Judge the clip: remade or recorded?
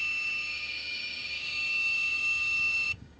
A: remade